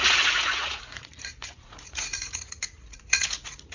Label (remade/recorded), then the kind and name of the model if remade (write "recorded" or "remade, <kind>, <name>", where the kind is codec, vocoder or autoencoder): remade, vocoder, Vocos